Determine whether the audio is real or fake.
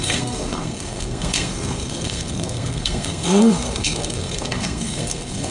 fake